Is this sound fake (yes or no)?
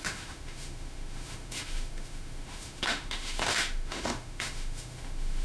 yes